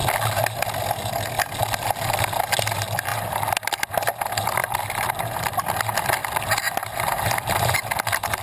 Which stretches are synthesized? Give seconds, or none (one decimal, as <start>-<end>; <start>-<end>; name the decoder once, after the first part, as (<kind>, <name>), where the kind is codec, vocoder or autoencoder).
4.6-5.8 (vocoder, BigVGAN v2); 6.2-8.4